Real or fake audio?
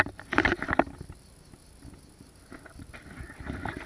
real